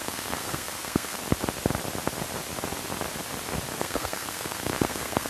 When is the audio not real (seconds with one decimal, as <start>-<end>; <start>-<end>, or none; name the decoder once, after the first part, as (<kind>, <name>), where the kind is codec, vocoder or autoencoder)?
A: 0.0-1.2 (codec, SNAC); 3.8-5.3